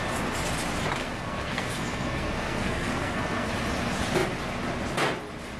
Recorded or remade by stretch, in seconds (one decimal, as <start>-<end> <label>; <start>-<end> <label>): 0.0-1.0 recorded; 1.0-3.5 remade; 3.5-5.6 recorded